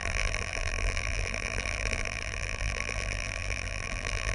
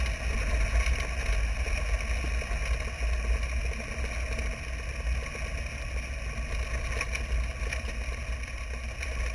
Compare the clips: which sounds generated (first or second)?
first